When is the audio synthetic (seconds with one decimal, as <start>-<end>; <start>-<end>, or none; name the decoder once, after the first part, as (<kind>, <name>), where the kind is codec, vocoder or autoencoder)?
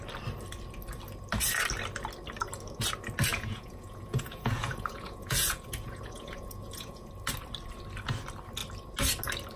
3.3-7.1 (vocoder, Vocos)